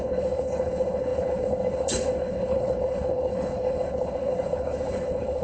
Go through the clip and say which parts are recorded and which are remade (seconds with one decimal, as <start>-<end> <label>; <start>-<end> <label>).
0.0-5.4 remade